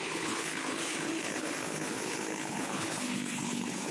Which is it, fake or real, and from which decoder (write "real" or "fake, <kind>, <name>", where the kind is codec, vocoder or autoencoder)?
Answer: fake, codec, HILCodec